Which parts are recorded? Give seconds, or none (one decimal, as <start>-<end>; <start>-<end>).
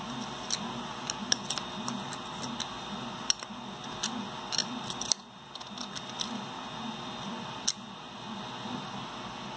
0.0-9.6